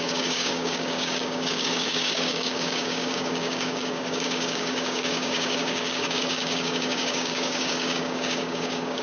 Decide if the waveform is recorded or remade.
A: remade